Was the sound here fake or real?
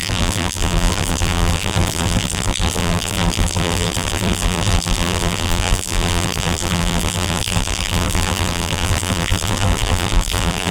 fake